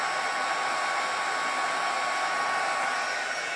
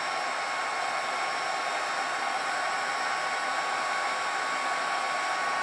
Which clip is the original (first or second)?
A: first